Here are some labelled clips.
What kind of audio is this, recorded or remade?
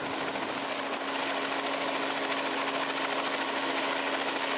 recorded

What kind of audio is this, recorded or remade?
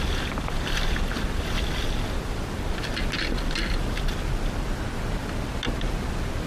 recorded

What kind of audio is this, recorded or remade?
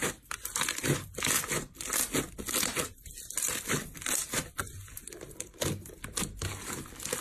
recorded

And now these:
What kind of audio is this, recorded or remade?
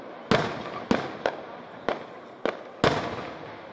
recorded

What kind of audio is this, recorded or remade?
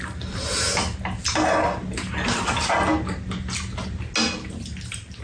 recorded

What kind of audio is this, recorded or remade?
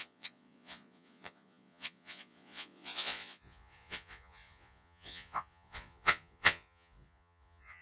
remade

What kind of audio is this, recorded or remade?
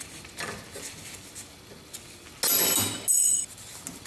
recorded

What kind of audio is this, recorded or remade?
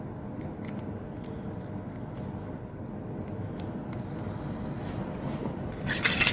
recorded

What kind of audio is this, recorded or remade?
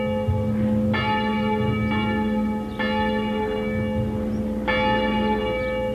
recorded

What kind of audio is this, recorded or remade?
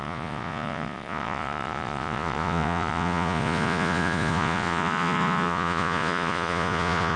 remade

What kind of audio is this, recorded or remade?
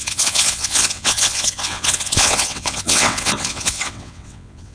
remade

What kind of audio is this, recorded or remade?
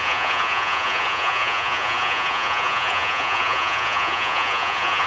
remade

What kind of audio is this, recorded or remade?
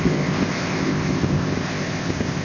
remade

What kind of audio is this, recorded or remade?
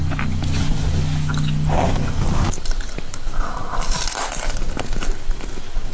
recorded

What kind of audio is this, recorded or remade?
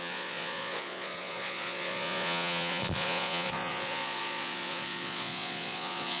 remade